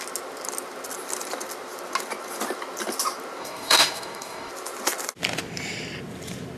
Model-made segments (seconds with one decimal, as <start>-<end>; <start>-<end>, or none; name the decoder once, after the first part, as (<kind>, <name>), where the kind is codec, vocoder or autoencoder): 3.4-4.5 (codec, DAC)

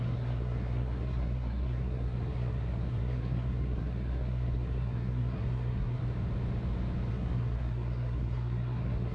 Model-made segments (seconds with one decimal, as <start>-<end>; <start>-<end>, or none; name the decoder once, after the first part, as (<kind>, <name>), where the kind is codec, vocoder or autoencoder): 0.0-6.0 (codec, SNAC); 7.1-9.1

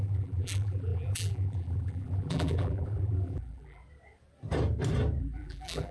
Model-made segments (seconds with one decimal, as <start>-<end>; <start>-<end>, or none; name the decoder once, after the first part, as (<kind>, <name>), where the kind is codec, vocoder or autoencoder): 0.0-3.8 (vocoder, BigVGAN v2); 5.2-5.9

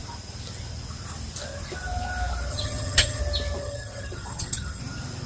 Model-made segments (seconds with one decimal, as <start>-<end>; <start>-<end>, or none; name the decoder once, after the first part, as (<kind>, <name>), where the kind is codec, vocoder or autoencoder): 2.5-3.2 (vocoder, HiFi-GAN); 3.6-4.8

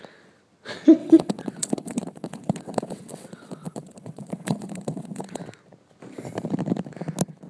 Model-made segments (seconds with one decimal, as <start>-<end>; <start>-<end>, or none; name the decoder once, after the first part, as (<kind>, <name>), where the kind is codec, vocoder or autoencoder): 1.0-5.4 (vocoder, WaveNeXt)

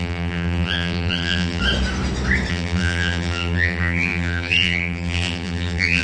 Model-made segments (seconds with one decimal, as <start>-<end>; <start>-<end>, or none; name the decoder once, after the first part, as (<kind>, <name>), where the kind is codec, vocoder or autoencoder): 0.0-1.6 (vocoder, BigVGAN v2); 2.5-6.0

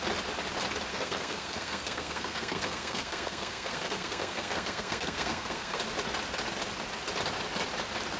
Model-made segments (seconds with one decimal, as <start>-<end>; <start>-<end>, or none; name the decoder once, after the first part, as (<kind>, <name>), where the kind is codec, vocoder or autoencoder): 0.9-5.8 (codec, SNAC)